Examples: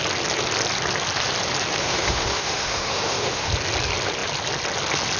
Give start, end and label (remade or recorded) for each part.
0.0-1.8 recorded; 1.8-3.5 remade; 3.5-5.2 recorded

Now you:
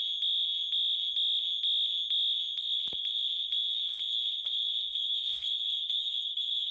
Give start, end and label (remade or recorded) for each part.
0.0-4.9 recorded; 4.9-6.7 remade

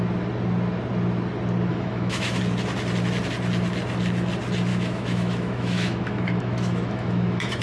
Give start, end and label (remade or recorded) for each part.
0.0-1.7 recorded; 1.7-2.4 remade; 2.4-4.7 recorded; 4.7-7.6 remade

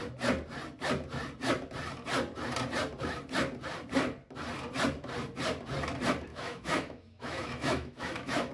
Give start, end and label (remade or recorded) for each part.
0.0-6.3 recorded; 6.3-8.5 remade

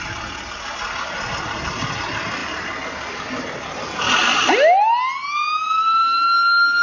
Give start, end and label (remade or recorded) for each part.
0.0-6.8 recorded

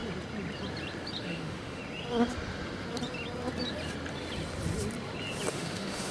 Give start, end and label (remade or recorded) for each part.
0.0-1.2 recorded; 1.2-1.8 remade; 1.8-5.5 recorded; 5.5-6.1 remade

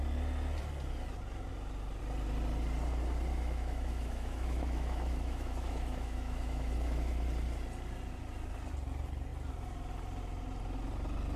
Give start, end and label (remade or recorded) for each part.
0.0-3.3 recorded; 3.3-7.2 remade; 7.2-11.4 recorded